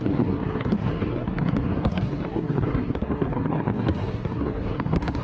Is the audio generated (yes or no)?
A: yes